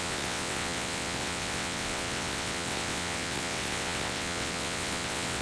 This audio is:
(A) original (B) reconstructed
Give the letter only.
B